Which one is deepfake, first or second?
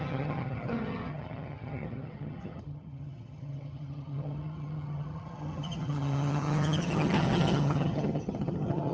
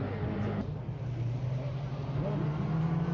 first